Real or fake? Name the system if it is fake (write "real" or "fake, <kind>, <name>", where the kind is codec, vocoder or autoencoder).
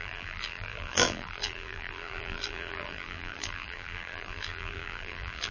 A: fake, vocoder, BigVGAN v2